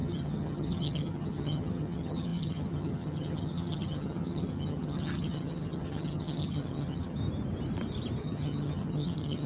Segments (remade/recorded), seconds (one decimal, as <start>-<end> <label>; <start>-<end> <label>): 0.0-7.2 remade; 7.2-8.2 recorded; 8.2-9.5 remade